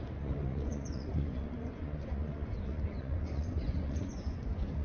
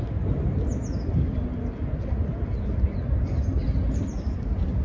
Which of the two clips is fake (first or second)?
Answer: first